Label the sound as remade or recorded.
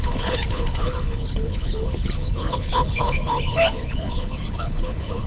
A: remade